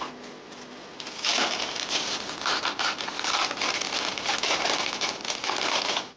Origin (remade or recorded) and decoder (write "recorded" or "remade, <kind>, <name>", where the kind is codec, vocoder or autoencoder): remade, vocoder, BigVGAN v2